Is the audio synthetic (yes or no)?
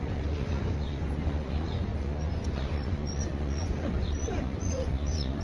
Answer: yes